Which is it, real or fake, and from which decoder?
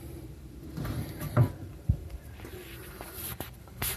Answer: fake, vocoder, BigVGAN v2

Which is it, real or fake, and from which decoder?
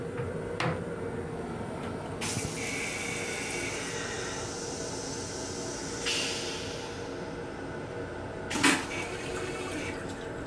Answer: real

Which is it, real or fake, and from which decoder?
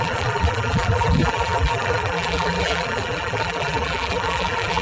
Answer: fake, vocoder, BigVGAN v2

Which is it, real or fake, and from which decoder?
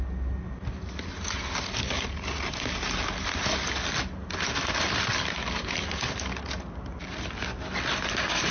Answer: real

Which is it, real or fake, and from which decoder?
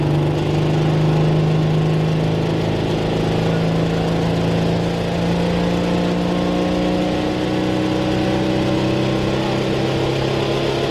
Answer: real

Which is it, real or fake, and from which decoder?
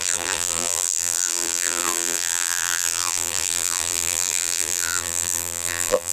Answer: fake, vocoder, BigVGAN v2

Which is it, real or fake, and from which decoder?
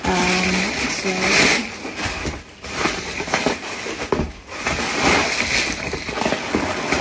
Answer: real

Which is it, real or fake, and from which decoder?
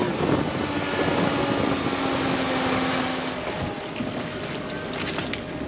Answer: real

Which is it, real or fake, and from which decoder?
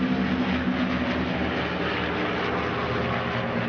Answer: real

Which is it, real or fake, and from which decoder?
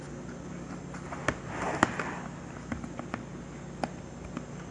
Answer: real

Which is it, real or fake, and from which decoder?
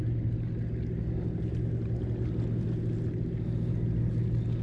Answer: real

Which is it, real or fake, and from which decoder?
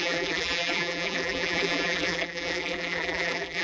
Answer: fake, vocoder, BigVGAN v2